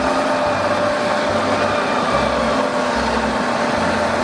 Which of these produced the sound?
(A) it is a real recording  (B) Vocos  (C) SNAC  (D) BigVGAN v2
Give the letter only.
A